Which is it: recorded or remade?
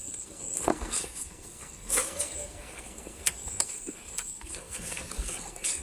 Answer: remade